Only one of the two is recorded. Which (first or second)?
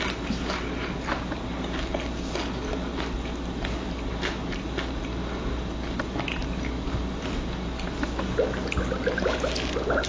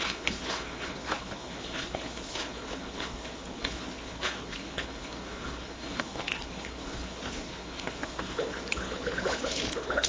first